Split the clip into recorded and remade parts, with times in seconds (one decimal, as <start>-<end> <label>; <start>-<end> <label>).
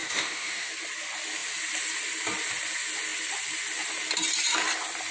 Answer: 0.0-0.7 remade; 0.7-5.1 recorded